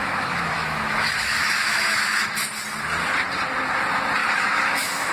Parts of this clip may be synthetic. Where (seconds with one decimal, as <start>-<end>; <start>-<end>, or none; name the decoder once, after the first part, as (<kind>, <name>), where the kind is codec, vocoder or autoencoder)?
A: 0.0-2.5 (autoencoder, DAC-VAE); 4.2-5.1